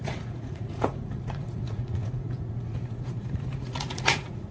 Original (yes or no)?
no